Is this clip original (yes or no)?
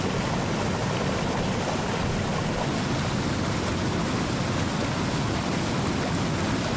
yes